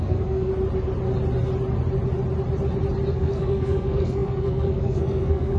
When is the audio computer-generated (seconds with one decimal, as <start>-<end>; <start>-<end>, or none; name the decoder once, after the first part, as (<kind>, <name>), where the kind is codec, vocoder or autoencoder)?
0.0-0.5 (codec, SNAC); 3.1-5.6